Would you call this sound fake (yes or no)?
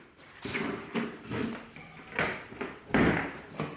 no